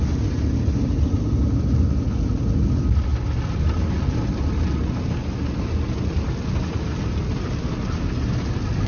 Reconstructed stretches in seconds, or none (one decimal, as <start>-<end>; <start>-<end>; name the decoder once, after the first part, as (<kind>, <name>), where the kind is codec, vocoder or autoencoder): none